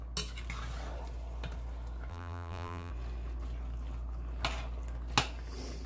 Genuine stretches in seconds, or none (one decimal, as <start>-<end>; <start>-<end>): 0.0-2.1; 2.9-5.9